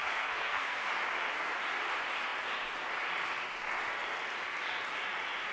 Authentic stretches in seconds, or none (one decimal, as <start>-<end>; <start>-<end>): 0.9-5.5